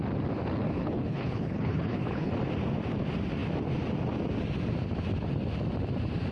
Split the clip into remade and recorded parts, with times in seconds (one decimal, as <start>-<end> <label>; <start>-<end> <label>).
0.0-0.8 recorded; 0.8-2.3 remade; 2.3-6.3 recorded